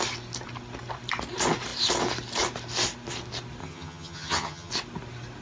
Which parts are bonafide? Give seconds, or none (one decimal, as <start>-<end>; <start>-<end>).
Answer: 0.0-3.6; 4.7-5.4